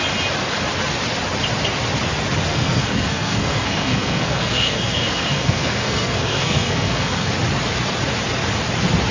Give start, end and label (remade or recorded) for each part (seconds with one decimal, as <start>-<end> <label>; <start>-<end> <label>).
0.0-2.5 recorded; 2.5-7.3 remade; 7.3-9.1 recorded